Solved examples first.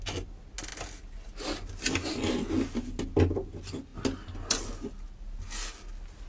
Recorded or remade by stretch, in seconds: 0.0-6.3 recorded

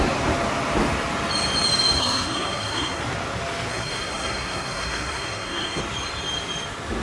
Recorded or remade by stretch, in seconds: 0.0-2.0 recorded; 2.0-3.0 remade; 3.0-3.7 recorded; 3.7-5.8 remade; 5.8-7.0 recorded

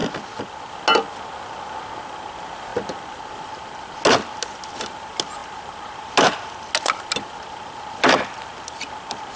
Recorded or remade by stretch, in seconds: 0.0-9.4 recorded

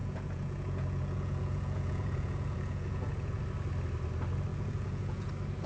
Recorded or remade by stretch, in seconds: 0.0-3.4 remade; 3.4-4.5 recorded; 4.5-5.3 remade; 5.3-5.7 recorded